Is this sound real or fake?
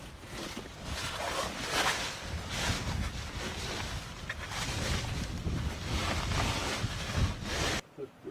real